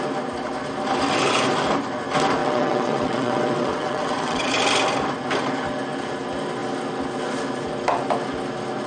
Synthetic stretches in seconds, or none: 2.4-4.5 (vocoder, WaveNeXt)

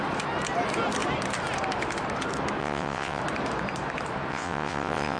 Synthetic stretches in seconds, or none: 2.6-3.2 (vocoder, WaveNeXt); 4.3-5.2